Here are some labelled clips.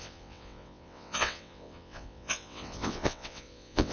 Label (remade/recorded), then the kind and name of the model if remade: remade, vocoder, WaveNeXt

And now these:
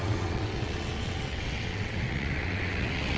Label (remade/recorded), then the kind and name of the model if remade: remade, vocoder, WaveNeXt